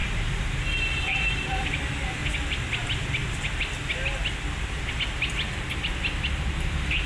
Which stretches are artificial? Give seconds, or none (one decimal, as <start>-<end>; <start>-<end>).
1.0-2.2; 6.3-7.1